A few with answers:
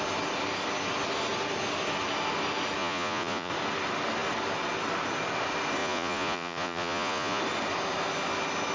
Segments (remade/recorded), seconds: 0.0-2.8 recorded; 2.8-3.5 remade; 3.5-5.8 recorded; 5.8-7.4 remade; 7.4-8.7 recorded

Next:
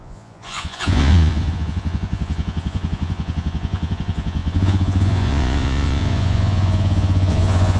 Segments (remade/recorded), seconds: 0.0-7.8 remade

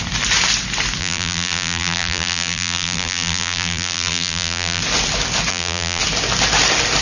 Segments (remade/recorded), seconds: 0.0-1.0 recorded; 1.0-4.8 remade; 4.8-5.5 recorded; 5.5-6.0 remade; 6.0-7.0 recorded

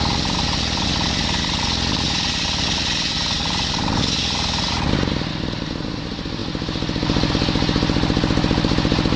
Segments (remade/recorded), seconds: 0.0-9.2 recorded

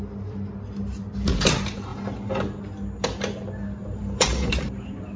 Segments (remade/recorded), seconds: 0.0-3.8 recorded; 3.8-4.5 remade; 4.5-5.2 recorded

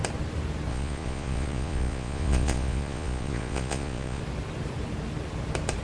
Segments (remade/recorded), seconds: 0.0-0.7 recorded; 0.7-4.2 remade; 4.2-5.8 recorded

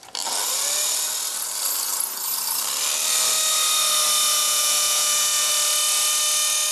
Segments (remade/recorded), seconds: 0.0-4.4 recorded; 4.4-5.5 remade; 5.5-6.7 recorded